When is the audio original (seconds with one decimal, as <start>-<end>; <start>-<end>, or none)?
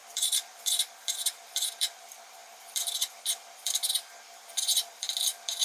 none